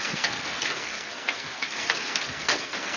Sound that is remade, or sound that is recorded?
remade